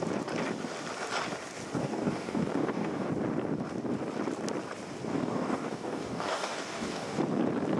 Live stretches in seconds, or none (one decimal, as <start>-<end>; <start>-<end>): 0.0-1.8; 3.1-5.1; 7.2-7.8